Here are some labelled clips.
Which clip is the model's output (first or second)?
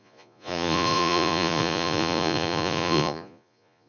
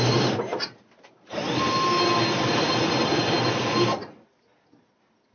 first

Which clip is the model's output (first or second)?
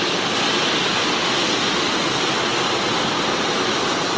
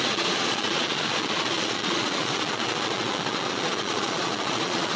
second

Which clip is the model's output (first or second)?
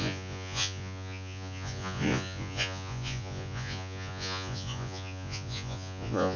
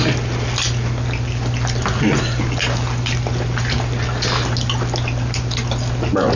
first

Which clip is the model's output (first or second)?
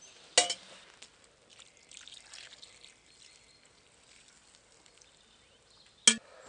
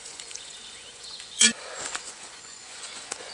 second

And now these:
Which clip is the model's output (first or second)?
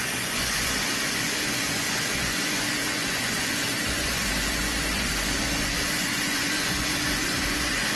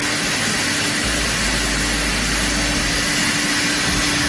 first